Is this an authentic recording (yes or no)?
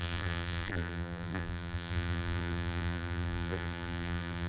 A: no